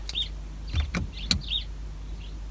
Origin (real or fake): real